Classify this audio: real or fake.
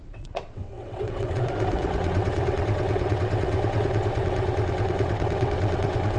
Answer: fake